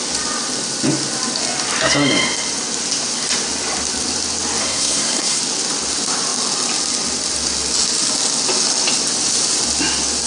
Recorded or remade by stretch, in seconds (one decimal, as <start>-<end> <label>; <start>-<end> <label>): 0.0-4.6 recorded; 4.6-5.4 remade; 5.4-10.3 recorded